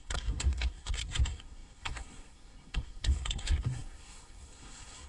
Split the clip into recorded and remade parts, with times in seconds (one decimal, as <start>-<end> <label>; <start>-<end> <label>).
0.0-5.1 remade

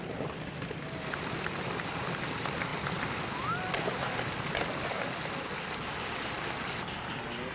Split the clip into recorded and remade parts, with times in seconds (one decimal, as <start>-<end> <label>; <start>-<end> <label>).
0.0-7.5 recorded

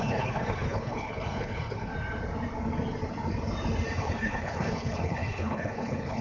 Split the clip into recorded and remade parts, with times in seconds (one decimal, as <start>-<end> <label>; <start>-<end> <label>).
0.0-1.9 remade; 1.9-4.0 recorded; 4.0-6.2 remade

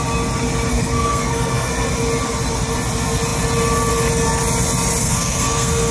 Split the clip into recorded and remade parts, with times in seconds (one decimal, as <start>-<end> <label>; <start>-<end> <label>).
0.0-0.7 recorded; 0.7-1.7 remade; 1.7-5.0 recorded; 5.0-5.9 remade